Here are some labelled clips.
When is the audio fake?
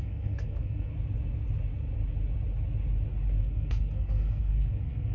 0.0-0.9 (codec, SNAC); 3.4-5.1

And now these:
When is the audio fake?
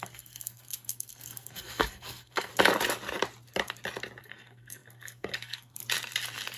0.0-2.5 (codec, SNAC); 4.2-5.8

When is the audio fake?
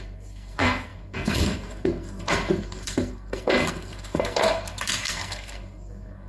0.0-6.3 (codec, SNAC)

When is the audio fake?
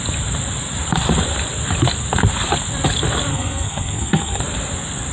3.3-4.4 (codec, SNAC)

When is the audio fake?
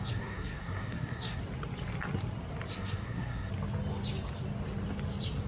0.0-1.4 (codec, SNAC); 2.7-3.5